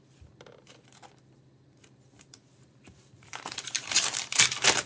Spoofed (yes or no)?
yes